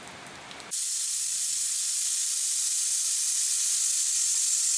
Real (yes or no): yes